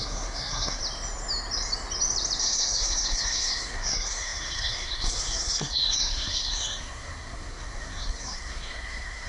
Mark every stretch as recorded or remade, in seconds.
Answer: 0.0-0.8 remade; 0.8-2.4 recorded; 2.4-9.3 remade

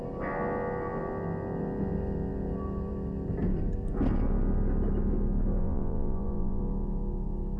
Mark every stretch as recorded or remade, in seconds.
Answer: 0.0-5.6 recorded; 5.6-6.6 remade; 6.6-7.6 recorded